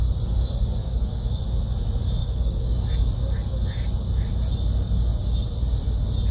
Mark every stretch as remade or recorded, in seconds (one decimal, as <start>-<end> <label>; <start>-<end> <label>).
0.0-0.8 recorded; 0.8-1.4 remade; 1.4-2.2 recorded; 2.2-2.8 remade; 2.8-6.3 recorded